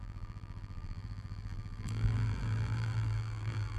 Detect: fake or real fake